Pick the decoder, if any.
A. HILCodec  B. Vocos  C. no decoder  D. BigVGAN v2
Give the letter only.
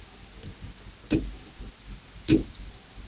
D